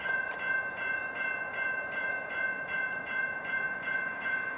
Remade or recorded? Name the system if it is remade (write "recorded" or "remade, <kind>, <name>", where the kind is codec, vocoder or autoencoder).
remade, vocoder, Vocos